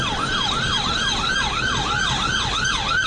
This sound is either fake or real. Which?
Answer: real